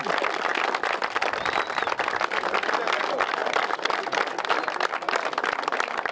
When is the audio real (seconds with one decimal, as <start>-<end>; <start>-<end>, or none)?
0.0-6.1